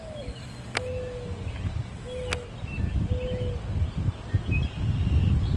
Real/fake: real